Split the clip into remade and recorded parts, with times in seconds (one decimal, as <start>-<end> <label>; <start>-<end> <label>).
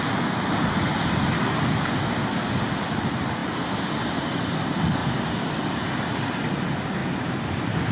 0.0-5.0 recorded; 5.0-6.5 remade; 6.5-7.0 recorded; 7.0-7.9 remade